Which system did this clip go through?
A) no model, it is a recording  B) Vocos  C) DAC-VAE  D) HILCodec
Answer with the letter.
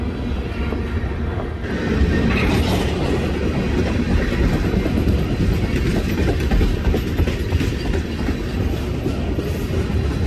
A